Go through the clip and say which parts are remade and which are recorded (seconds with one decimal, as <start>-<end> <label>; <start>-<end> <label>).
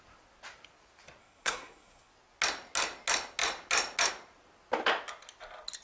0.0-1.2 recorded; 1.2-2.1 remade; 2.1-5.8 recorded